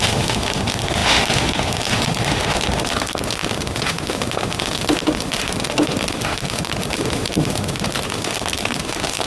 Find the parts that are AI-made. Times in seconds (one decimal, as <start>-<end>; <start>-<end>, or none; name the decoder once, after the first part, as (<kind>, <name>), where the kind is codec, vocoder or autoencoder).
0.0-9.3 (autoencoder, DAC-VAE)